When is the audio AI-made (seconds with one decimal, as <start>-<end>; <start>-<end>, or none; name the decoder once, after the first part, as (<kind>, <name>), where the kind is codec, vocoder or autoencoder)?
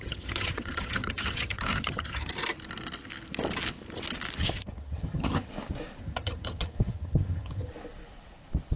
0.0-2.3 (vocoder, HiFi-GAN); 4.4-5.5; 6.0-7.7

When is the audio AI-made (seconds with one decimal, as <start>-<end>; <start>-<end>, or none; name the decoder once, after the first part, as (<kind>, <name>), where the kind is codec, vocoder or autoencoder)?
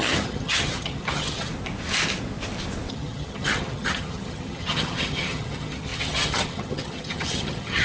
0.0-1.5 (vocoder, HiFi-GAN); 2.9-7.8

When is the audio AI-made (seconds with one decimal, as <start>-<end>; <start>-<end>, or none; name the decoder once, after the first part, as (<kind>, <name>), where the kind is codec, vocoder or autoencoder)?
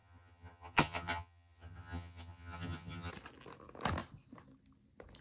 0.0-3.1 (vocoder, HiFi-GAN)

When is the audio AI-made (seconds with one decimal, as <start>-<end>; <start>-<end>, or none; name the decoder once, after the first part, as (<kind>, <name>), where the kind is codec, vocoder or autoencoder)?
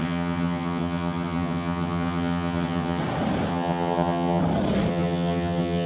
0.0-3.0 (vocoder, HiFi-GAN); 3.5-4.4; 4.9-5.9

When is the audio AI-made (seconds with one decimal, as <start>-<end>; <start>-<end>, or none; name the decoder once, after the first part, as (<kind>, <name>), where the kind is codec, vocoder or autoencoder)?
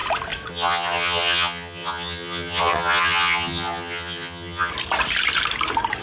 0.5-4.7 (vocoder, HiFi-GAN)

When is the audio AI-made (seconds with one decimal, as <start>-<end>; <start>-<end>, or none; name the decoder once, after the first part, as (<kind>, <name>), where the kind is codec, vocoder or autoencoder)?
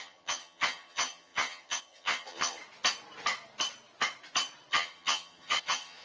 0.0-2.6 (vocoder, HiFi-GAN); 4.7-6.0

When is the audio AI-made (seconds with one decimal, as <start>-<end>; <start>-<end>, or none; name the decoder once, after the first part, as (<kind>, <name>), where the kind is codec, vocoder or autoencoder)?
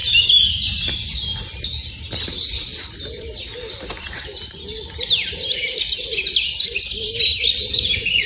none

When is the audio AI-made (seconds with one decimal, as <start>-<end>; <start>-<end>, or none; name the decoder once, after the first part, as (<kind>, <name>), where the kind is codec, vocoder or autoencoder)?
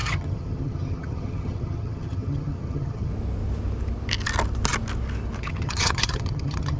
0.0-3.1 (vocoder, HiFi-GAN); 5.4-6.8